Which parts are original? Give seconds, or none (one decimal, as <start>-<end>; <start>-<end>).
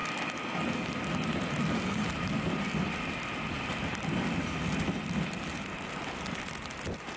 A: 0.0-7.2